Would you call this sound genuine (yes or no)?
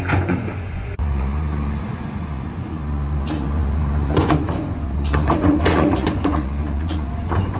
no